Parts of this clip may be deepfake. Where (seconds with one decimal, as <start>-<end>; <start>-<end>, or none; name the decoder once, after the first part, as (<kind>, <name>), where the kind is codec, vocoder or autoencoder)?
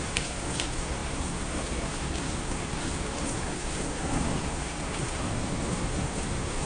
0.0-6.7 (codec, SNAC)